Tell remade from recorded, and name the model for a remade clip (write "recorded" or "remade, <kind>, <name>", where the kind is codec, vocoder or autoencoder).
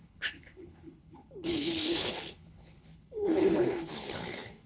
remade, codec, HILCodec